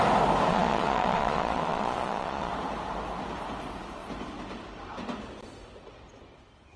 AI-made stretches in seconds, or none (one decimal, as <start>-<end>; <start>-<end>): 0.5-2.5